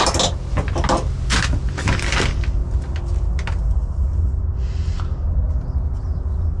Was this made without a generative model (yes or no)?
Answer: yes